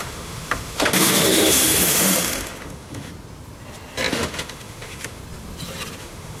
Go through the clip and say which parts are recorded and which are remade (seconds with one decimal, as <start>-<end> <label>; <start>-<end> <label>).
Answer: 0.0-3.1 remade; 3.1-4.1 recorded; 4.1-5.2 remade; 5.2-6.0 recorded; 6.0-6.4 remade